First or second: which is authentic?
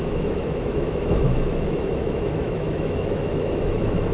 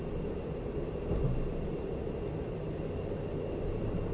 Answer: second